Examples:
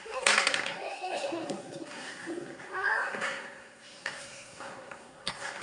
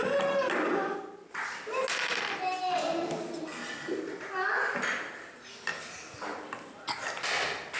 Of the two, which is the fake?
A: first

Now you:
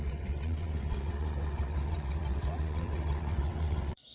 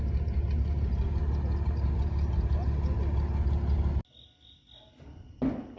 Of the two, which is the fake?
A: first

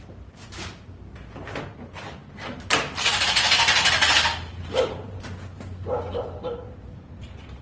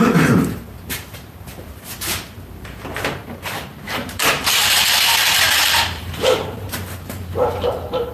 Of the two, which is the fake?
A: second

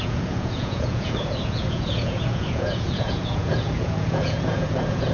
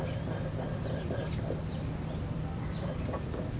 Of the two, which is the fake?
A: first